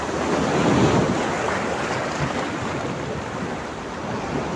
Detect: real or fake real